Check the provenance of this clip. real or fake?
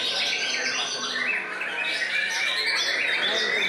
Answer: real